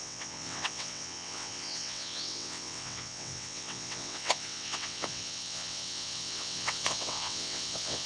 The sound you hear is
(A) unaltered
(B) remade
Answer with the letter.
B